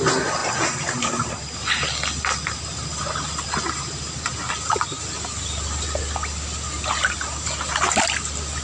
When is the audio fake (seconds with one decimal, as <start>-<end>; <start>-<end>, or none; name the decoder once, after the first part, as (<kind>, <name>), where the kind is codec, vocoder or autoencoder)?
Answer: none